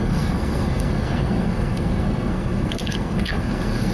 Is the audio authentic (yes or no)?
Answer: no